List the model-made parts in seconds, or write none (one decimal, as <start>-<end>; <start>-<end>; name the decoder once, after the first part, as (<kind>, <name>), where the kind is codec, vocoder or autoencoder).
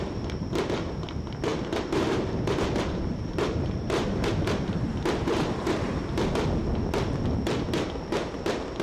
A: 1.5-6.1 (vocoder, BigVGAN v2)